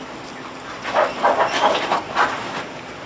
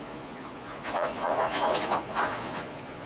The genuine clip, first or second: first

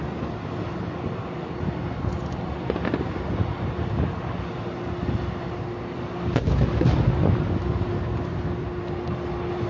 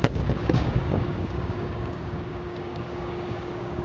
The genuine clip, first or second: first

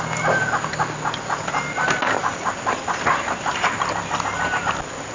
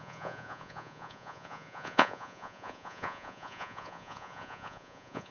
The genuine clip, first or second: first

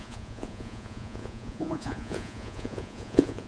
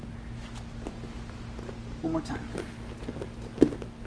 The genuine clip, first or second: second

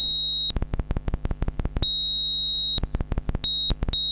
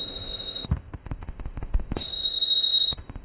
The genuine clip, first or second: first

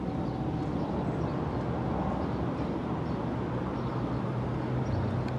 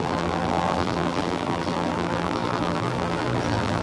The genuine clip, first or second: first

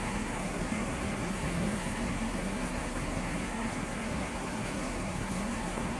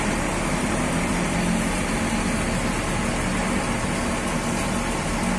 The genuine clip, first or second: second